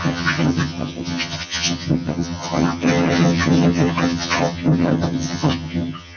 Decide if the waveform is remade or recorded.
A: remade